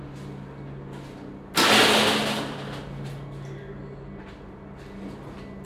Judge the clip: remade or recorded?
recorded